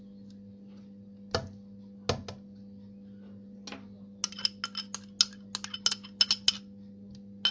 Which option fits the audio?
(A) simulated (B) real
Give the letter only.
B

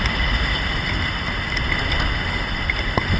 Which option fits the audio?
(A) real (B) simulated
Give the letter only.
A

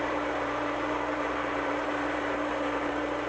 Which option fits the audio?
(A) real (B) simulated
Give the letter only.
B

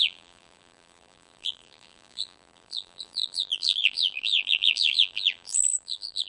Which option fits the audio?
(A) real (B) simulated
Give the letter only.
B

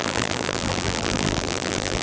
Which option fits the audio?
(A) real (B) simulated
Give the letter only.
B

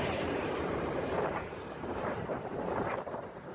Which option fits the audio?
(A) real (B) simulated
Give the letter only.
B